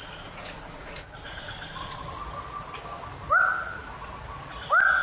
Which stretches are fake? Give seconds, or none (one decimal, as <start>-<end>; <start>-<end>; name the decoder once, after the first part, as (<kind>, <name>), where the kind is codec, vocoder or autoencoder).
0.0-2.0 (vocoder, Vocos)